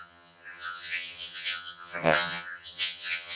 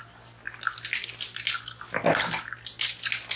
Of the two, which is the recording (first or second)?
second